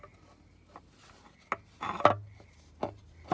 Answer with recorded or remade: recorded